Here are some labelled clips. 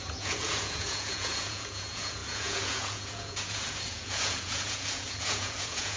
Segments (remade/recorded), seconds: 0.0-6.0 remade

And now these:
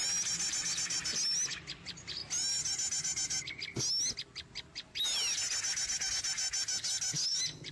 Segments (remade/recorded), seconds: 0.0-7.7 recorded

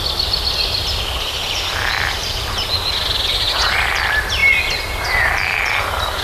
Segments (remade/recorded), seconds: 0.0-2.2 recorded; 2.2-2.9 remade; 2.9-6.2 recorded

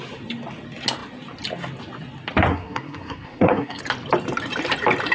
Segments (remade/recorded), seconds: 0.0-2.5 recorded; 2.5-3.8 remade; 3.8-5.1 recorded

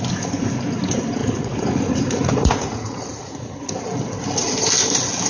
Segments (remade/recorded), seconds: 0.0-1.2 recorded; 1.2-3.7 remade; 3.7-5.3 recorded

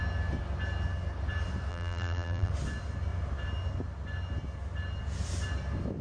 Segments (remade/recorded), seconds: 0.0-1.7 recorded; 1.7-2.5 remade; 2.5-6.0 recorded

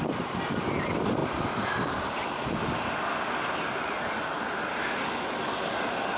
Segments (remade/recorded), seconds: 0.0-6.2 recorded

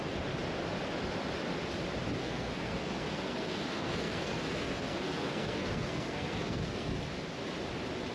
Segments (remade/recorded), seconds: 0.0-2.2 recorded; 2.2-7.0 remade; 7.0-8.1 recorded